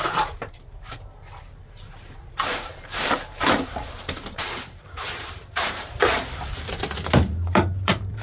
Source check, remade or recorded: remade